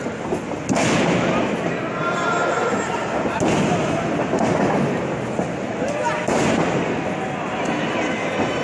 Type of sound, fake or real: real